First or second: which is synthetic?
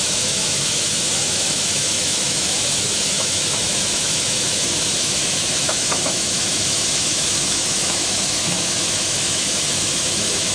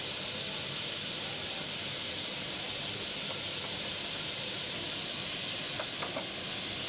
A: first